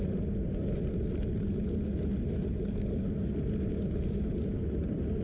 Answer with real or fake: real